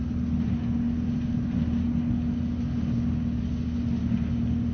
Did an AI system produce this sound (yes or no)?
no